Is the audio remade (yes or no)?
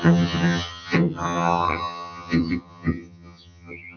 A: yes